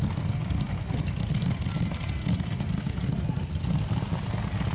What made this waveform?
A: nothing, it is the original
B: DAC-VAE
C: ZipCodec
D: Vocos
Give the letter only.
A